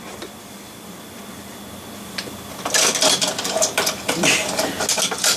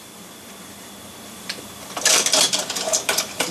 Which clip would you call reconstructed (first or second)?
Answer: second